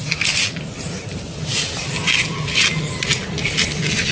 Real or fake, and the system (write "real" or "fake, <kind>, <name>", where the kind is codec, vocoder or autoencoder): real